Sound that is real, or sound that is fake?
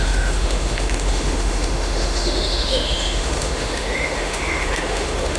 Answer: fake